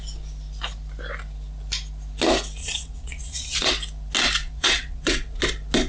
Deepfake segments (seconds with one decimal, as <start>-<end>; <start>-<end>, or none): 2.6-3.7; 4.4-5.4